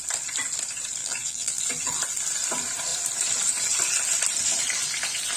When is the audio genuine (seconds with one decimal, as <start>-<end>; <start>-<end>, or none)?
0.0-1.0; 1.6-5.4